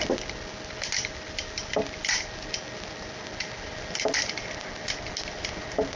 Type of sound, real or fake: real